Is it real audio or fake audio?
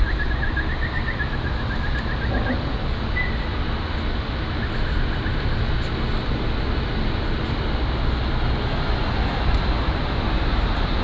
real